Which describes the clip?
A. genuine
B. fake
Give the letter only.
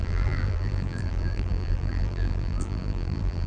B